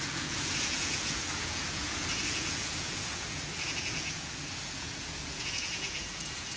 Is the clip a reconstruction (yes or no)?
yes